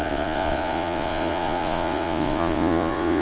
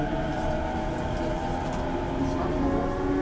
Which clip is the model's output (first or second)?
first